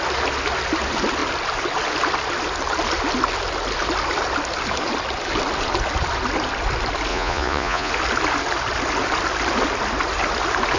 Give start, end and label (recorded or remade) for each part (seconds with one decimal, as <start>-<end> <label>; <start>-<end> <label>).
0.0-7.1 recorded; 7.1-7.9 remade; 7.9-10.8 recorded